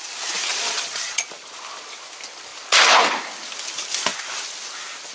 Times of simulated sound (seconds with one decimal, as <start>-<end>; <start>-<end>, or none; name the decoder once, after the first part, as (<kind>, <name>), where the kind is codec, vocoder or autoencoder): 0.5-1.3 (vocoder, Vocos)